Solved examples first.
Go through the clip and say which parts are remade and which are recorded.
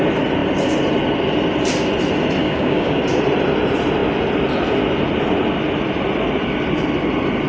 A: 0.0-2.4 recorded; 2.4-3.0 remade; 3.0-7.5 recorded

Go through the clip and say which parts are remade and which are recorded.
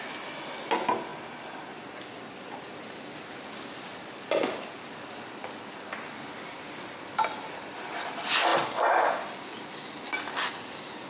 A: 0.0-11.1 recorded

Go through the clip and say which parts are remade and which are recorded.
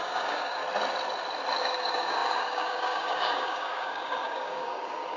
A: 0.0-0.6 remade; 0.6-1.6 recorded; 1.6-5.2 remade